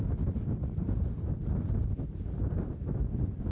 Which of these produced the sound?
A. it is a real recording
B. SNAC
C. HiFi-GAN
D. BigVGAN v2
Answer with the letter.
A